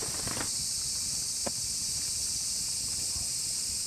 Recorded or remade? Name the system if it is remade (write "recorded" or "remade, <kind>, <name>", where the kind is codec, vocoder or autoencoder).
remade, vocoder, BigVGAN v2